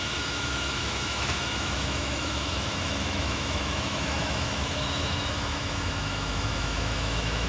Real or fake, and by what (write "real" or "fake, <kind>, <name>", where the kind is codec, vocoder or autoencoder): fake, autoencoder, DAC-VAE